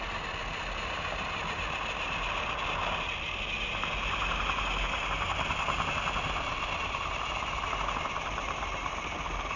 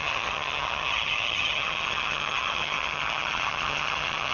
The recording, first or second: first